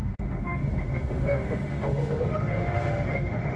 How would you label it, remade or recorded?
remade